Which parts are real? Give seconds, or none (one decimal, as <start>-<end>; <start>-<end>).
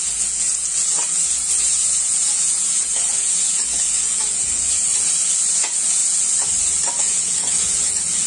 4.9-5.5; 6.0-7.0